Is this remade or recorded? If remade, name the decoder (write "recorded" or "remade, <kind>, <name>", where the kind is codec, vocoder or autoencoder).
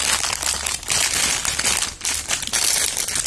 recorded